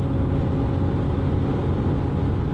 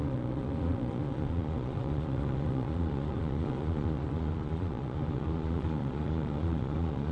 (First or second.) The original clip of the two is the first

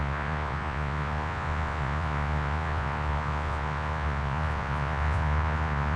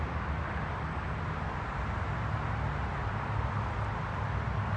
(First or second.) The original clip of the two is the second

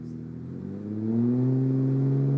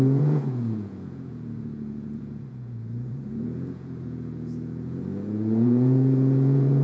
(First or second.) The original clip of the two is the first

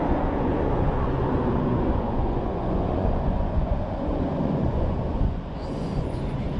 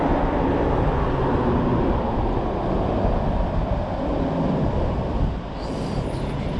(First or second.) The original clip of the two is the second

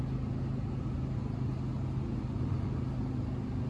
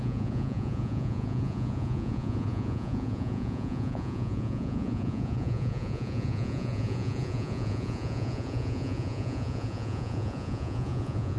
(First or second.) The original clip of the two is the first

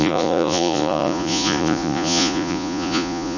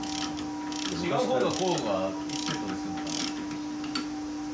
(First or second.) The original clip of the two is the second